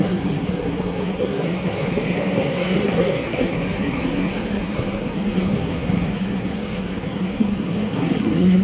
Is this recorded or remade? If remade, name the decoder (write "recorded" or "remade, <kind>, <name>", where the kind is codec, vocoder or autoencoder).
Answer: remade, codec, SNAC